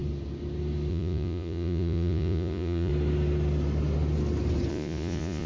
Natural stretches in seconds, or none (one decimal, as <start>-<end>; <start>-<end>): 0.0-0.9; 2.9-4.7